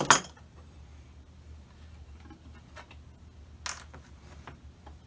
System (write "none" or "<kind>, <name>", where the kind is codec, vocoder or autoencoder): none